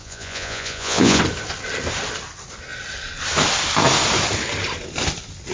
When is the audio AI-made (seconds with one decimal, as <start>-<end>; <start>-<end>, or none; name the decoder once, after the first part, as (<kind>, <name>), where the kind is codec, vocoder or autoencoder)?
0.0-1.2 (vocoder, Vocos)